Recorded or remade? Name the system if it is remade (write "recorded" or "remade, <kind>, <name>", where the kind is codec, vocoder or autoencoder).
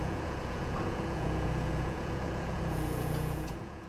remade, vocoder, Vocos